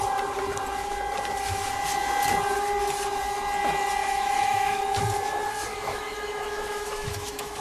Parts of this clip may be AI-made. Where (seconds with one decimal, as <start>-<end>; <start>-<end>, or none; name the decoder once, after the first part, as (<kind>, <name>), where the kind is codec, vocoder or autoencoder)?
4.0-4.8 (autoencoder, DAC-VAE); 5.7-7.6